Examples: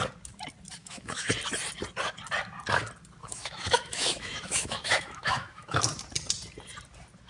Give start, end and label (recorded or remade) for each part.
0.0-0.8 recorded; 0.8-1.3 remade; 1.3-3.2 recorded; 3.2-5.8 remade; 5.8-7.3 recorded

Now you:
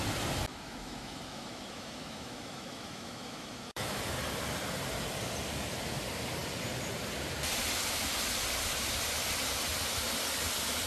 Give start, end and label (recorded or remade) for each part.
0.0-0.5 recorded; 0.5-4.0 remade; 4.0-10.9 recorded

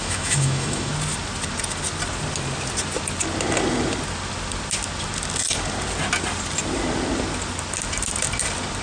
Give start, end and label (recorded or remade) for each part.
0.0-0.9 remade; 0.9-8.8 recorded

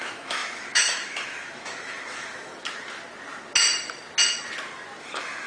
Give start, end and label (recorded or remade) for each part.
0.0-2.5 remade; 2.5-5.0 recorded; 5.0-5.5 remade

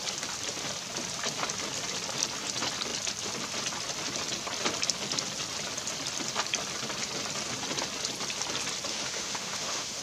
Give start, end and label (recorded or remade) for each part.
0.0-8.9 recorded; 8.9-10.0 remade

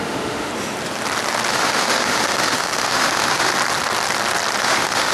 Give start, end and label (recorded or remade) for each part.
0.0-0.5 remade; 0.5-1.5 recorded; 1.5-3.5 remade; 3.5-4.6 recorded; 4.6-5.1 remade